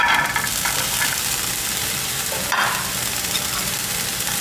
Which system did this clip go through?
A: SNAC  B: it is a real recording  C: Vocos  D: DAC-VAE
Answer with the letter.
B